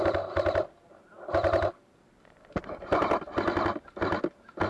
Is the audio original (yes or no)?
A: yes